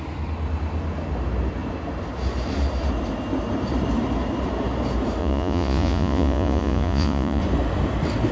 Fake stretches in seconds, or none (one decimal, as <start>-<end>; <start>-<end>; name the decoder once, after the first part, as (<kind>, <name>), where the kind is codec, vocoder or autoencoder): 5.2-7.4 (vocoder, Vocos)